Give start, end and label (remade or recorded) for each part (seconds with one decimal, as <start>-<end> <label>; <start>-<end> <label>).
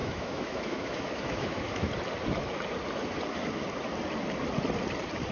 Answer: 0.0-1.9 remade; 1.9-5.3 recorded